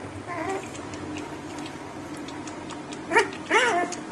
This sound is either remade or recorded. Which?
recorded